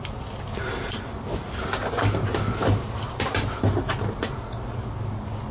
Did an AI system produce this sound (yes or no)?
no